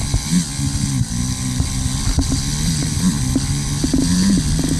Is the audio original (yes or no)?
yes